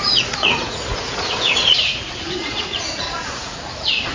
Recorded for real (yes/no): no